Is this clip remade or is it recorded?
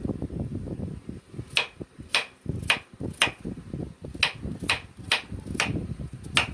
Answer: recorded